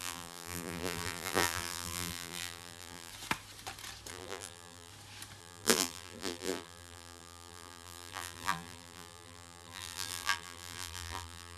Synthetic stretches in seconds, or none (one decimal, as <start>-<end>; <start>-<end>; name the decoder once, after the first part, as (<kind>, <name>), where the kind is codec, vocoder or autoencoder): 0.0-3.1 (vocoder, BigVGAN v2); 4.1-4.9; 5.4-11.6